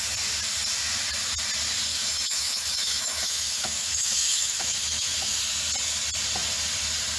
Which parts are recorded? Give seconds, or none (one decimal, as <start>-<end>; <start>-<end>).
0.0-1.9; 5.4-7.2

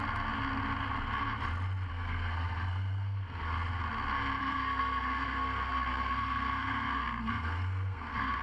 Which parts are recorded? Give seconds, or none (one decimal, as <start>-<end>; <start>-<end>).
0.0-1.9; 3.5-4.4

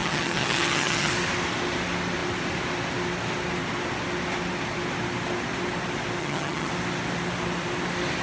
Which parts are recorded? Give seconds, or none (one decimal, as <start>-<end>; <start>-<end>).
1.1-6.2; 6.7-8.2

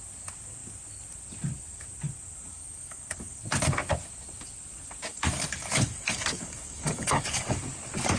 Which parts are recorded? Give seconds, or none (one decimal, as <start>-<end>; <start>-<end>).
0.0-2.5; 3.4-5.1; 7.6-8.2

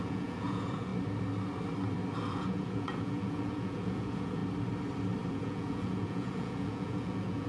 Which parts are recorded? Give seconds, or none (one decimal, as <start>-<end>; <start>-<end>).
0.9-2.3; 4.4-5.3